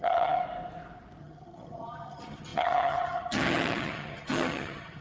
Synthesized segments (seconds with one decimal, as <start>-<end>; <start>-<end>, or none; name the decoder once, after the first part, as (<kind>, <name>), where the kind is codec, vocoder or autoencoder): 0.0-0.4 (vocoder, HiFi-GAN); 1.2-5.0